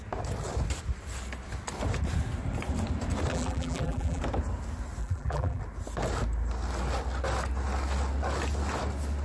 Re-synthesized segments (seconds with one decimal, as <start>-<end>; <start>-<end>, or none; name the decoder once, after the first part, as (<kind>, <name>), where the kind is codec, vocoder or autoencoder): 3.3-4.2 (vocoder, BigVGAN v2); 5.0-5.6